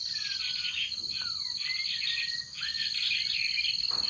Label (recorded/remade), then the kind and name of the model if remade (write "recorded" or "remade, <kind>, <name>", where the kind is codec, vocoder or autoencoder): recorded